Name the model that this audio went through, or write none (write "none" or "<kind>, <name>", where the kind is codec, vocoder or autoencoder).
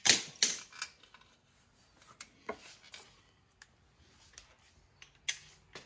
none